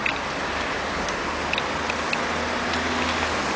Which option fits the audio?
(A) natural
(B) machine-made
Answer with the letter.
A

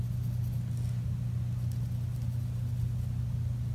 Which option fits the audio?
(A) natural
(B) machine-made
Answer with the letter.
A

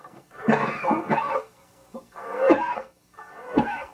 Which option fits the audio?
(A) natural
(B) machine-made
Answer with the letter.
B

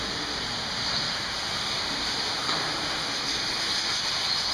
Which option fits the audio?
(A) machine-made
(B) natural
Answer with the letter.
B